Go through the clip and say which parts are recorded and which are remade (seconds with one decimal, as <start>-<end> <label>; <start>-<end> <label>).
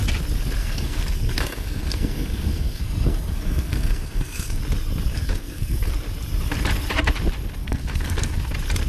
0.0-0.6 recorded; 0.6-4.6 remade; 4.6-5.1 recorded; 5.1-5.9 remade; 5.9-7.6 recorded; 7.6-8.4 remade; 8.4-8.9 recorded